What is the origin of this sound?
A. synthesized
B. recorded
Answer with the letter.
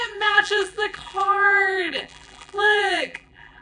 A